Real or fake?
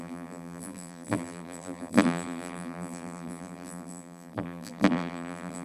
fake